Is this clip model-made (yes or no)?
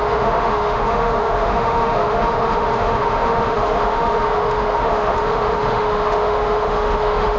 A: yes